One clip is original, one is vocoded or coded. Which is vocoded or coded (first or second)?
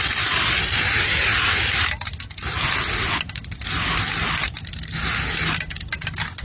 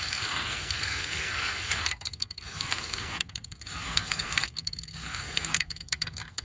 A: second